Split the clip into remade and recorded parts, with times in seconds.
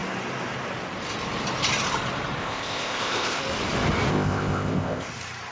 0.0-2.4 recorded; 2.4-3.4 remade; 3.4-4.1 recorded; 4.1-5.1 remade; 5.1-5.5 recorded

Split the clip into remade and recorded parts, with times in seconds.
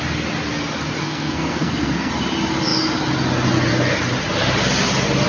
0.0-1.0 recorded; 1.0-2.1 remade; 2.1-5.3 recorded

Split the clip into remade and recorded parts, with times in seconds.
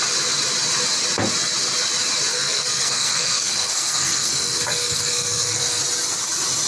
0.0-2.3 recorded; 2.3-5.8 remade; 5.8-6.7 recorded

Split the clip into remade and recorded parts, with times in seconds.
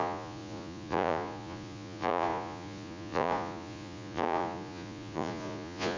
0.0-6.0 remade